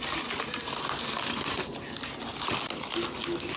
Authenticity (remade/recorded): recorded